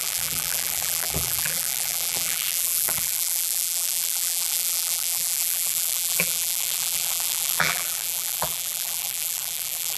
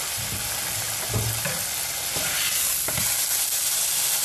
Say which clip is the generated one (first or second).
first